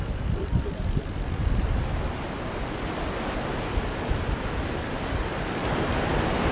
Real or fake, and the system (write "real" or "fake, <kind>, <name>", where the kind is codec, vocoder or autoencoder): real